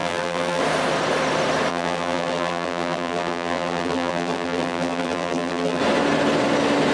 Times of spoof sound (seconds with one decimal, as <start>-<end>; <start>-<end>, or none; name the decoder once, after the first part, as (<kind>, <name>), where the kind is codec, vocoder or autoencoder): 0.0-0.6 (vocoder, BigVGAN v2); 1.7-5.8